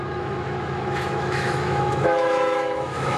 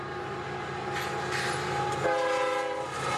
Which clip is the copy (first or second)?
first